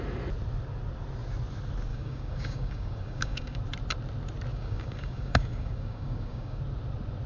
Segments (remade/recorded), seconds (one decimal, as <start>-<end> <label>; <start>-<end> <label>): 0.0-1.9 recorded; 1.9-3.6 remade; 3.6-4.5 recorded; 4.5-6.6 remade; 6.6-7.3 recorded